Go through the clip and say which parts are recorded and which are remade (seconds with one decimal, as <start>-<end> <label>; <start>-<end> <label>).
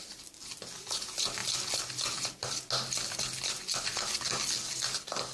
0.0-5.3 recorded